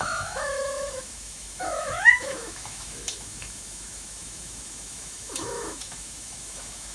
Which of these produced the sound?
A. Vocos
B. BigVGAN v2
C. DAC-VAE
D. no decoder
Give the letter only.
C